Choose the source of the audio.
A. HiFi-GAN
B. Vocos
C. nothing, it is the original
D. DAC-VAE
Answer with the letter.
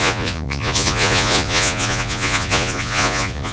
B